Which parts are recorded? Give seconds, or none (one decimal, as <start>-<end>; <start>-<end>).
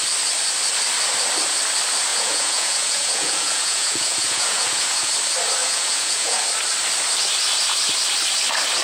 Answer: 0.0-2.1; 5.1-5.6; 6.4-8.8